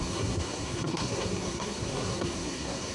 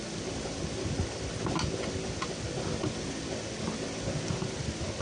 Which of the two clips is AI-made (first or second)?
first